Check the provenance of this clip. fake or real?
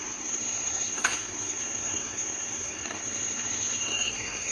fake